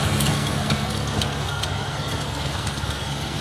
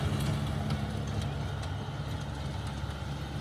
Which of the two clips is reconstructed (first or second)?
first